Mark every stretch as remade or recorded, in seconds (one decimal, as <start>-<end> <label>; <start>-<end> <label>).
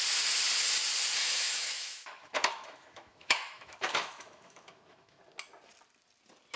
0.0-1.2 recorded; 1.2-5.2 remade; 5.2-6.6 recorded